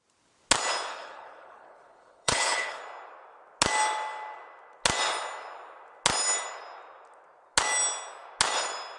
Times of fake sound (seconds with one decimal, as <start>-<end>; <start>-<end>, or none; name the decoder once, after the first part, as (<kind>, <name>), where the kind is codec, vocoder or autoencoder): 0.9-2.8 (codec, HILCodec)

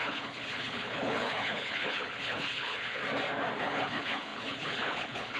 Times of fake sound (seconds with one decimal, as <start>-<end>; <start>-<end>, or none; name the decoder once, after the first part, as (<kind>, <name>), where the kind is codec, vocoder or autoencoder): 0.0-3.0 (codec, HILCodec); 3.6-5.4

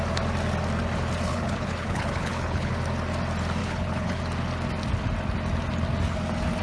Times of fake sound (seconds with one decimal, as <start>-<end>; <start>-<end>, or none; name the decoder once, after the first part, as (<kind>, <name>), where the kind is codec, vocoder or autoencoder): 1.3-2.7 (codec, HILCodec); 3.6-4.2

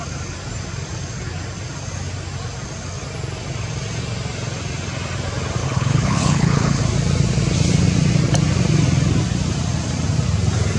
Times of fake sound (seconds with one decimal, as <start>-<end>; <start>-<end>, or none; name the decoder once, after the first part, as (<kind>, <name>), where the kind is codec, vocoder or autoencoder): 5.6-6.8 (codec, HILCodec)